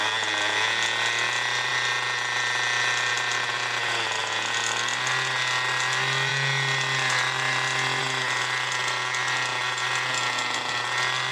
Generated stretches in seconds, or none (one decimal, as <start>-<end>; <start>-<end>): none